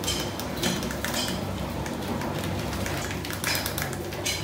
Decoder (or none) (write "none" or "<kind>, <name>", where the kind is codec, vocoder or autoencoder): vocoder, BigVGAN v2